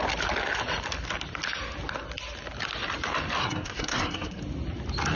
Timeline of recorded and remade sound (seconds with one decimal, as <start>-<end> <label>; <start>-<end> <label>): 0.0-3.4 recorded; 3.4-4.4 remade; 4.4-5.2 recorded